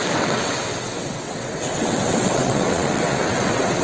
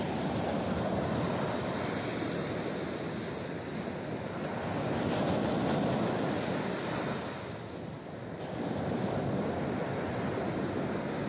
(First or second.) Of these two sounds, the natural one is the second